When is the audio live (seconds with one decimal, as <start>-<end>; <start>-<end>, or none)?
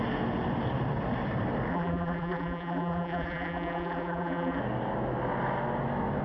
0.0-1.7; 4.6-6.2